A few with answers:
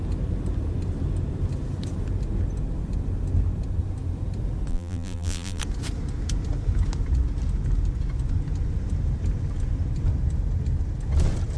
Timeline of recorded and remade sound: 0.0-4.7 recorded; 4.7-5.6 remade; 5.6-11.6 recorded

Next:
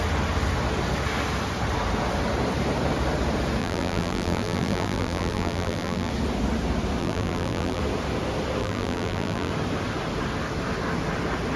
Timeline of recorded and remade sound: 0.0-3.6 recorded; 3.6-6.1 remade; 6.1-7.0 recorded; 7.0-7.8 remade; 7.8-8.6 recorded; 8.6-9.5 remade; 9.5-11.6 recorded

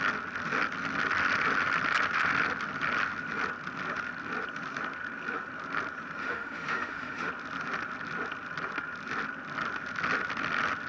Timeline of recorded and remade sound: 0.0-6.2 recorded; 6.2-7.3 remade; 7.3-10.9 recorded

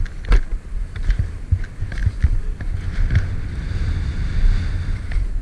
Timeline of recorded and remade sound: 0.0-0.5 recorded; 0.5-1.1 remade; 1.1-5.4 recorded

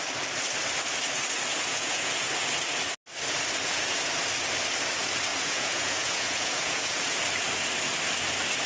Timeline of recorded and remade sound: 0.0-1.5 recorded; 1.5-2.3 remade; 2.3-5.3 recorded; 5.3-7.2 remade; 7.2-8.7 recorded

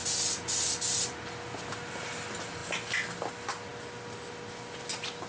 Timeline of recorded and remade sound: 0.0-5.3 recorded

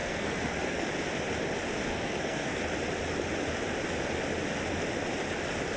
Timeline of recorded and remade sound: 0.0-0.9 remade; 0.9-1.9 recorded; 1.9-2.6 remade; 2.6-5.8 recorded